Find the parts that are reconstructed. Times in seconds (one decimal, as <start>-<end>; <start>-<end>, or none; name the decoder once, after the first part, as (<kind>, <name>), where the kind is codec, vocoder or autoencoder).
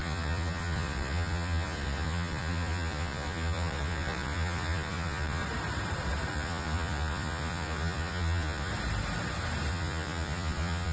0.0-5.4 (vocoder, Vocos); 6.3-8.7; 9.7-10.9